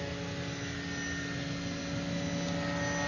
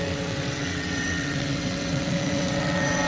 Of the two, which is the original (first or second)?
first